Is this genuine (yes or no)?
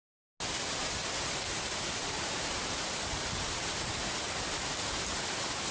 yes